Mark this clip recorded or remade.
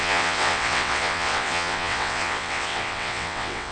remade